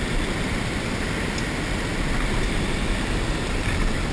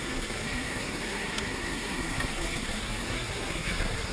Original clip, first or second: first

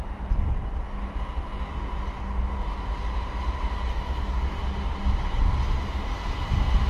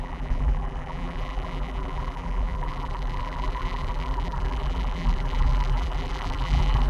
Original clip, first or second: first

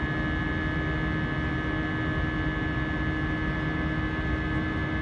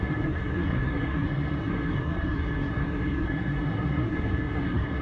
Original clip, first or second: first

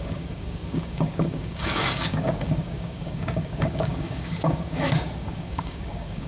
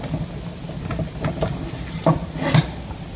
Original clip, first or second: second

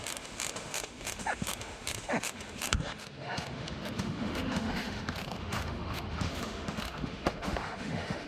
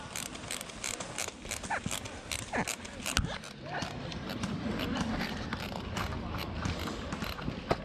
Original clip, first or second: second